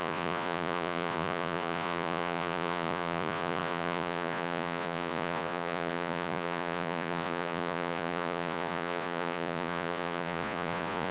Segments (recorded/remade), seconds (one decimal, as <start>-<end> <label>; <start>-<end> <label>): 0.0-11.1 remade